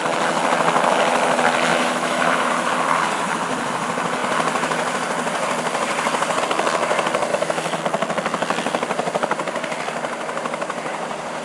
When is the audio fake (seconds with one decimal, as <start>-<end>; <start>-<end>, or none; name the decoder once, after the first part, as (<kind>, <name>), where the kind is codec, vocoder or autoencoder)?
1.7-2.7 (autoencoder, DAC-VAE); 7.3-7.8